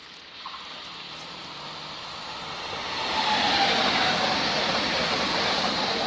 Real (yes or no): yes